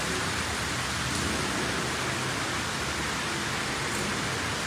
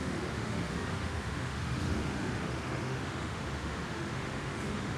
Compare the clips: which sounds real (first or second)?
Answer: first